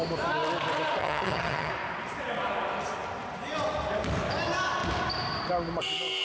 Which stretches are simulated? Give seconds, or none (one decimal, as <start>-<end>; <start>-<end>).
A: 1.0-1.7